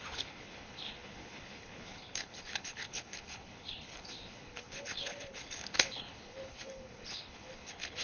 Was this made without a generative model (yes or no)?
no